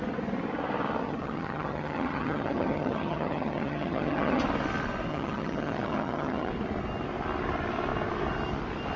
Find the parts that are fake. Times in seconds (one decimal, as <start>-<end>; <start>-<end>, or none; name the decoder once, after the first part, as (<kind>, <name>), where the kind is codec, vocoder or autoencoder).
1.0-4.4 (vocoder, HiFi-GAN); 5.1-6.5